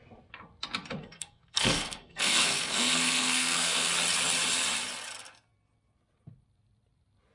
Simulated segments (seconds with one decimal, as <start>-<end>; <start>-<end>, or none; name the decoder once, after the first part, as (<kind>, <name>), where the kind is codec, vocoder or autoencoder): 1.0-3.9 (codec, SNAC)